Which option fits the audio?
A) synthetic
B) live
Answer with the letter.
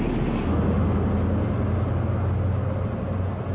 B